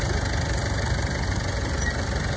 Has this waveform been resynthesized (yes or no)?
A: no